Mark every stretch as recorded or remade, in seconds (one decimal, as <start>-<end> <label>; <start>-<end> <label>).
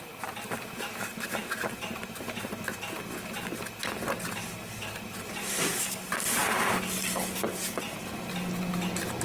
0.0-9.2 recorded